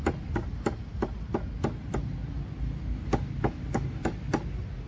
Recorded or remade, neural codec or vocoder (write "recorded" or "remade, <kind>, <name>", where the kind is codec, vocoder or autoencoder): recorded